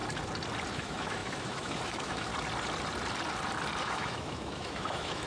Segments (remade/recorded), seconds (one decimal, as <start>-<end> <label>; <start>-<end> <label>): 0.0-0.7 recorded; 0.7-2.3 remade; 2.3-3.8 recorded; 3.8-5.3 remade